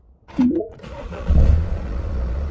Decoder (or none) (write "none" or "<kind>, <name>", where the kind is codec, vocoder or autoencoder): vocoder, Vocos